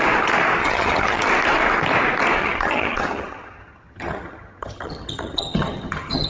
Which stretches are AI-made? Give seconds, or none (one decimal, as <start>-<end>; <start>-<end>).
0.6-1.2; 2.4-6.3